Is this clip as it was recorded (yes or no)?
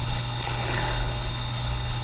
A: no